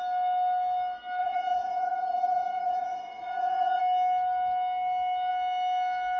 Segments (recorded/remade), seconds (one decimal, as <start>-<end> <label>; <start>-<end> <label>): 0.0-1.2 recorded; 1.2-3.8 remade; 3.8-6.2 recorded